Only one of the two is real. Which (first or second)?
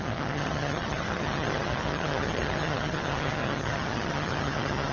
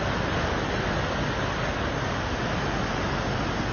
second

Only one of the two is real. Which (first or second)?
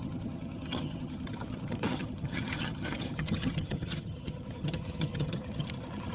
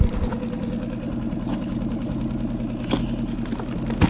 second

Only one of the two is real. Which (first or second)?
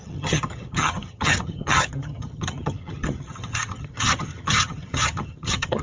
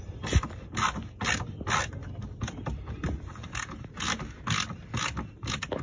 second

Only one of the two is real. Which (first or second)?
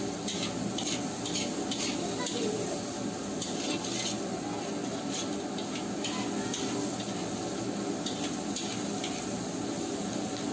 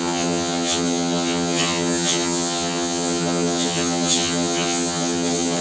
first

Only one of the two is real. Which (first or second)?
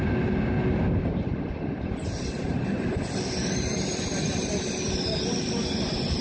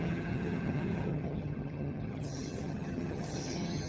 first